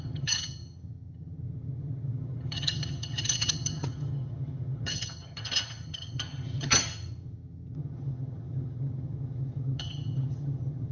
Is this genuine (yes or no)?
no